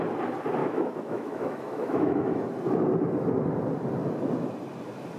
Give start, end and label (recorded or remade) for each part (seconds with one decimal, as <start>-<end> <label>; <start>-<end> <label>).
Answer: 0.0-0.6 recorded; 0.6-2.4 remade; 2.4-5.2 recorded